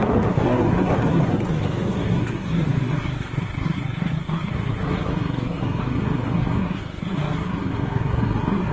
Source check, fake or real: fake